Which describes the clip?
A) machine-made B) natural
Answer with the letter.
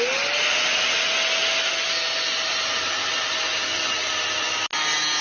B